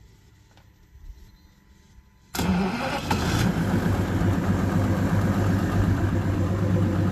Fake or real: real